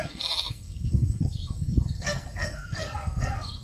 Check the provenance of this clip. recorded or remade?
remade